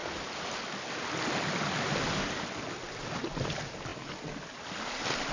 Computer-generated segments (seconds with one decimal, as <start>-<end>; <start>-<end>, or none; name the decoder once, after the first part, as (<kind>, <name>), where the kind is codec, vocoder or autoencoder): none